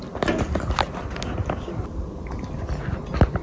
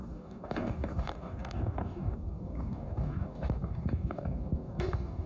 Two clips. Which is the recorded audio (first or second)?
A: first